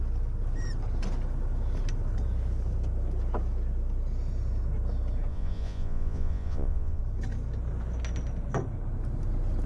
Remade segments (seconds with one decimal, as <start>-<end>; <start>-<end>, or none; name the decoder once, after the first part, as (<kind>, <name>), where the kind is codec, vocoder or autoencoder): 5.3-7.0 (vocoder, Vocos)